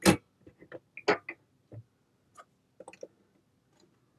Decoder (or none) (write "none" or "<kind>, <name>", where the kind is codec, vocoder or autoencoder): none